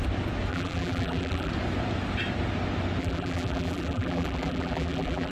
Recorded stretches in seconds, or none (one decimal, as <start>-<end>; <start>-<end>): 0.0-0.5; 1.5-3.0